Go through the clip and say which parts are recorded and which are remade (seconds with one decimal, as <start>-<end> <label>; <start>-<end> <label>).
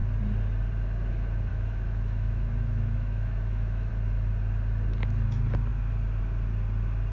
0.0-1.5 recorded; 1.5-3.9 remade; 3.9-7.1 recorded